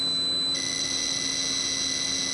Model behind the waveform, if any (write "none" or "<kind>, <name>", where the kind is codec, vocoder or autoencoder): none